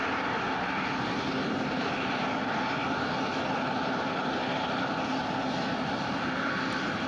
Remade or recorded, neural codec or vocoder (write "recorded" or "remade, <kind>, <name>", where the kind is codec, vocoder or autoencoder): recorded